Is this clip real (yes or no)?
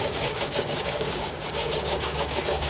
no